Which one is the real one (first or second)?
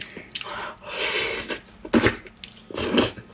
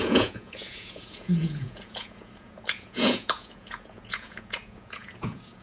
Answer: first